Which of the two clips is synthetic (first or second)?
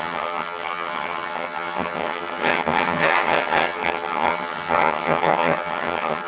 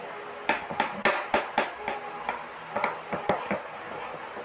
first